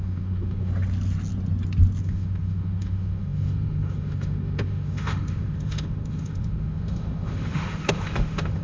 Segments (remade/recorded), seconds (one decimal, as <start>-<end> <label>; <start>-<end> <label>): 0.0-0.7 remade; 0.7-2.0 recorded; 2.0-8.6 remade

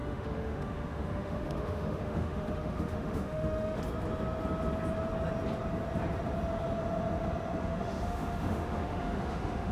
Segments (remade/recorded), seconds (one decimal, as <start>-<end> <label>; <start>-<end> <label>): 0.0-3.8 remade; 3.8-7.6 recorded; 7.6-9.7 remade

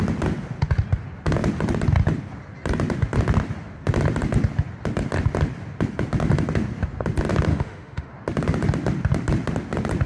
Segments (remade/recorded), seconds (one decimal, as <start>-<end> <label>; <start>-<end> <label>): 0.0-7.5 recorded; 7.5-8.1 remade; 8.1-10.1 recorded

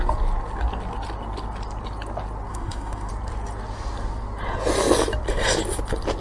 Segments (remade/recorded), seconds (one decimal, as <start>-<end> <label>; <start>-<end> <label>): 0.0-2.5 recorded; 2.5-3.1 remade; 3.1-6.2 recorded

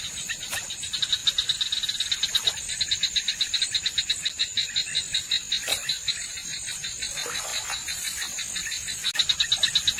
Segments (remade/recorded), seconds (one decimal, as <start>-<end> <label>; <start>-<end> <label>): 0.0-10.0 recorded

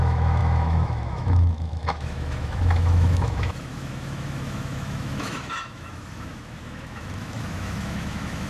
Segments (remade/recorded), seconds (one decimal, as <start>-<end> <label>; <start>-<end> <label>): 0.0-8.5 remade

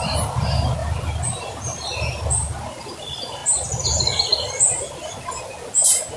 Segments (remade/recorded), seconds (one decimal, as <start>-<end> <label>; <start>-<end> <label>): 0.0-6.2 recorded